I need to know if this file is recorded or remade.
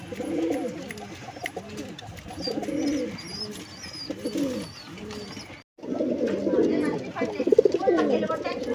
recorded